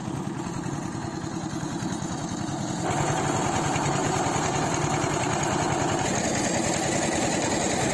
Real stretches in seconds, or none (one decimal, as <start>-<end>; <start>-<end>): 0.0-4.0; 4.6-7.9